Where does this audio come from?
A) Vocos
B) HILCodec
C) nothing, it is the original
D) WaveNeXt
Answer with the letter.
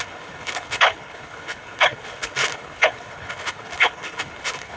B